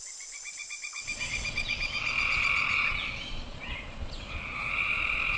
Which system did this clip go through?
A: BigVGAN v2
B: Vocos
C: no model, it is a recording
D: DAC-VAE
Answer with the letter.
B